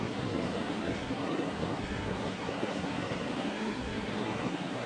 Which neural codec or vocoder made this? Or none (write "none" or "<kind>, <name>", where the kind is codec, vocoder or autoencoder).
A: codec, SNAC